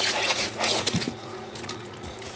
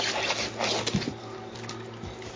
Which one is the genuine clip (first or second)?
second